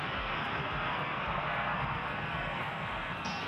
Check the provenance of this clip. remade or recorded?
remade